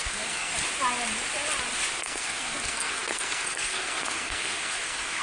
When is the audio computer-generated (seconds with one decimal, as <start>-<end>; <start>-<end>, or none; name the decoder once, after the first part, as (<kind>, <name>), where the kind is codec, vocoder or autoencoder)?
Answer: 0.0-0.5 (codec, SNAC); 2.0-5.2